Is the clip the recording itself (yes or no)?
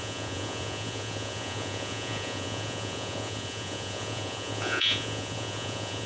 no